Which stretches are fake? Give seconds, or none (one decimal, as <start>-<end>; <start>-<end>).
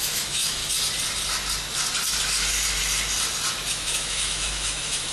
0.0-0.6; 3.7-5.1